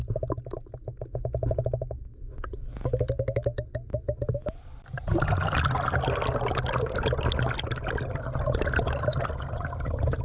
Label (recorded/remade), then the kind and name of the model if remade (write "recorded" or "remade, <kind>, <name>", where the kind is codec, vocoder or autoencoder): recorded